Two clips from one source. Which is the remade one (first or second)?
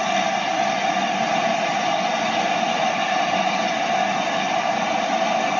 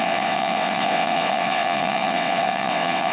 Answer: second